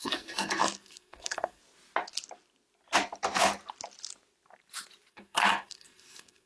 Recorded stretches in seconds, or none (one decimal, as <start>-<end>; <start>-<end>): 1.6-5.1